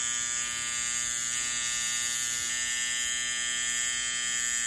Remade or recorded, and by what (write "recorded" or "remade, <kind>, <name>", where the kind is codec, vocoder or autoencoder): recorded